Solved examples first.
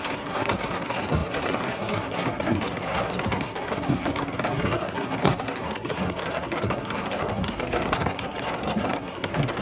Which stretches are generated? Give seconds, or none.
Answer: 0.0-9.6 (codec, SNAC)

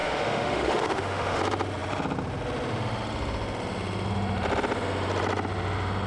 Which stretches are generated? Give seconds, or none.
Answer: 0.0-1.4 (autoencoder, DAC-VAE)

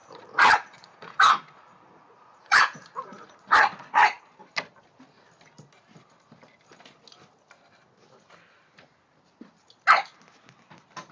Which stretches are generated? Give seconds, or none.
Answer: 0.0-4.2 (vocoder, Vocos)

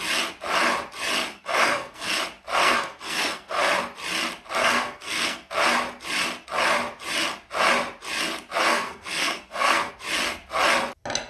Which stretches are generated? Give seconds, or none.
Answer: 1.3-2.1 (codec, SNAC); 2.6-3.7; 4.6-5.5; 8.7-9.9

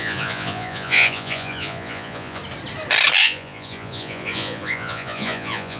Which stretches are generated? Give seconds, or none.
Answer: 0.0-2.4 (vocoder, Vocos); 3.2-5.8

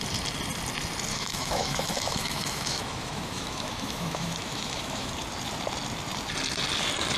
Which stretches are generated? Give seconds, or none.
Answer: 1.1-5.1 (autoencoder, DAC-VAE)

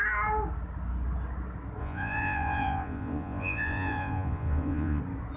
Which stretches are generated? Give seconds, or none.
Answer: 1.8-5.0 (vocoder, Vocos)